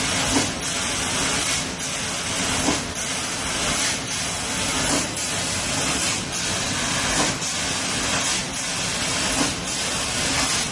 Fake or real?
real